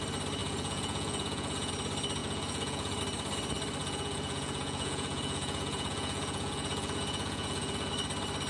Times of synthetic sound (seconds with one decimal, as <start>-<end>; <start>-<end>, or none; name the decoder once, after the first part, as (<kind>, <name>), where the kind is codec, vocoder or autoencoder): 0.4-1.7 (vocoder, Vocos); 2.2-3.0; 3.8-7.9